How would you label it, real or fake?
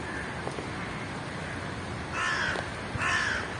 real